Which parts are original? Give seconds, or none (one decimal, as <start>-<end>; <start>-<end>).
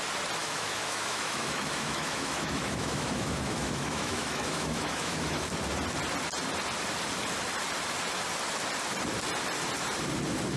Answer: 0.0-0.4; 5.5-10.6